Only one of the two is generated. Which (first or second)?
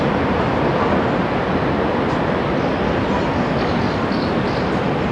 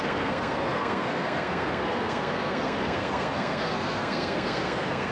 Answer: second